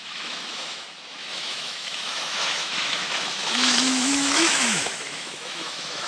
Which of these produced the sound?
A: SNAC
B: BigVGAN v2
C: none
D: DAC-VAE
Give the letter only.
D